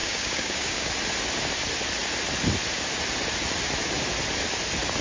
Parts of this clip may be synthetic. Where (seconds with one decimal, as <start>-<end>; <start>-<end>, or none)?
0.0-0.9